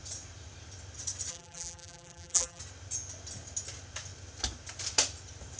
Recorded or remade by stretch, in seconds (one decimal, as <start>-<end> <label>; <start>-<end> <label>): 0.0-1.3 recorded; 1.3-2.6 remade; 2.6-5.6 recorded